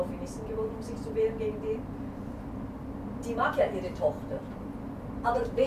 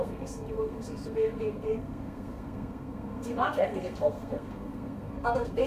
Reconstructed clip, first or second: second